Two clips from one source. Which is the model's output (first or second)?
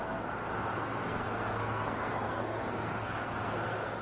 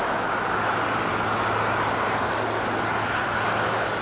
first